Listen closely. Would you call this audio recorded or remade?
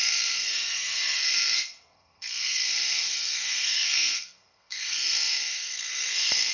remade